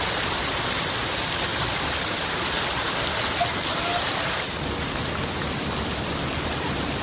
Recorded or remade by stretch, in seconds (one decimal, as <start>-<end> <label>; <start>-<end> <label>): 0.0-1.5 recorded; 1.5-3.1 remade; 3.1-3.9 recorded; 3.9-5.4 remade; 5.4-7.0 recorded